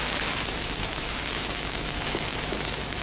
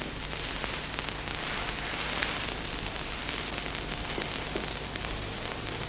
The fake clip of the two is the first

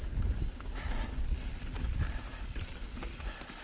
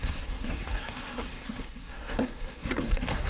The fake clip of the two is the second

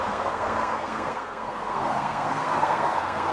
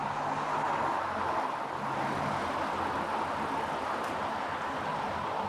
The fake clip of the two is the first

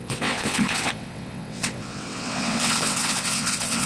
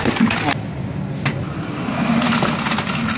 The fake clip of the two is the first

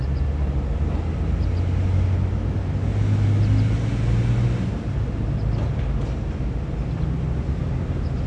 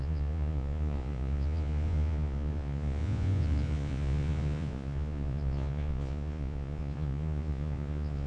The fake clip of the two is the second